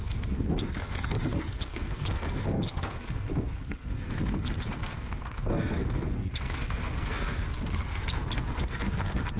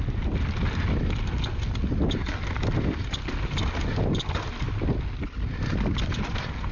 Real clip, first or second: second